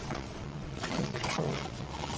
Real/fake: fake